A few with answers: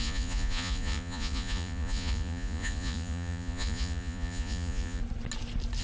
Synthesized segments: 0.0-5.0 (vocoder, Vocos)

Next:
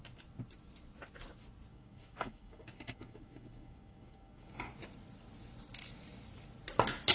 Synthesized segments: 1.7-4.7 (codec, DAC)

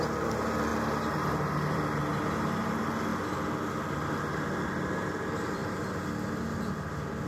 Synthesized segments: 0.7-2.0 (vocoder, BigVGAN v2); 5.6-6.5